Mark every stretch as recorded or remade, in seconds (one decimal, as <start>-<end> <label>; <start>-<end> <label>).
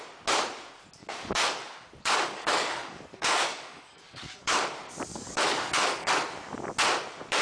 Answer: 0.0-1.0 recorded; 1.0-4.6 remade; 4.6-5.1 recorded; 5.1-6.1 remade; 6.1-7.4 recorded